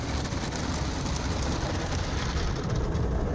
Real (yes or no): yes